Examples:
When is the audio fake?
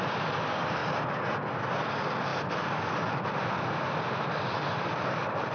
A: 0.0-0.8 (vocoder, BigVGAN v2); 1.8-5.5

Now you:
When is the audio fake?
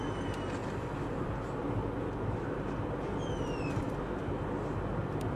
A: none